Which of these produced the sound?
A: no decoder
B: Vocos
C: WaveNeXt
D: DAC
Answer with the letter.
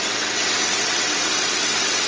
C